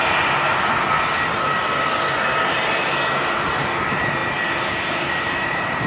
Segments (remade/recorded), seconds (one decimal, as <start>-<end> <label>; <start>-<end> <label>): 0.0-0.5 remade; 0.5-3.8 recorded; 3.8-5.9 remade